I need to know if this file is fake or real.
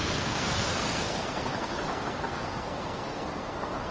fake